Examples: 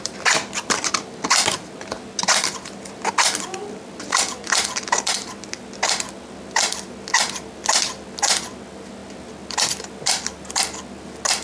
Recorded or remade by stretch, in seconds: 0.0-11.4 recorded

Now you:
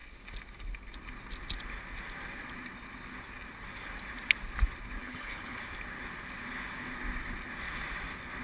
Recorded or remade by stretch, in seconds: 0.0-5.0 recorded; 5.0-5.6 remade; 5.6-8.4 recorded

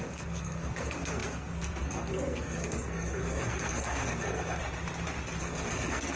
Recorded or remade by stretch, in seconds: 0.0-4.6 remade; 4.6-5.4 recorded; 5.4-6.2 remade